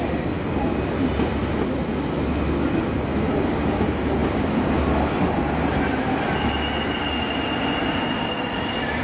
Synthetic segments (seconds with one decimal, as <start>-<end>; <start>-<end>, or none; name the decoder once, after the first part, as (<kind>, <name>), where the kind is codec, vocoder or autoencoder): none